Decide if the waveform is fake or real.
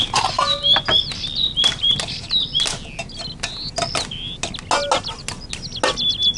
real